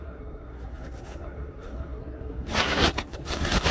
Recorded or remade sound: remade